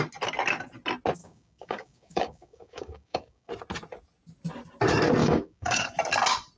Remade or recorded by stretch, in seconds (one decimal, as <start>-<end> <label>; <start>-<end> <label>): 0.0-1.2 recorded; 1.2-3.5 remade; 3.5-5.2 recorded; 5.2-5.9 remade; 5.9-6.6 recorded